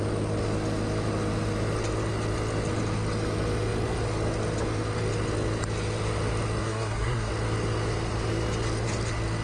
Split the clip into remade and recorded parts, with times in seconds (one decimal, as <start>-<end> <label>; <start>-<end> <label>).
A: 0.0-6.6 recorded; 6.6-7.3 remade; 7.3-9.4 recorded